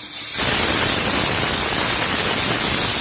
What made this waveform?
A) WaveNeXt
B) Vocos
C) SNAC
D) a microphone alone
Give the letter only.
D